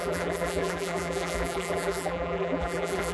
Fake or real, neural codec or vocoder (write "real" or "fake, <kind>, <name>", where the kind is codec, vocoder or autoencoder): fake, vocoder, BigVGAN v2